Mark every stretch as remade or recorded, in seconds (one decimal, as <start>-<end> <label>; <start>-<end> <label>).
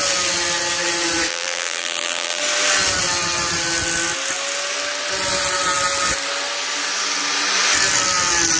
0.0-1.3 recorded; 1.3-2.4 remade; 2.4-8.6 recorded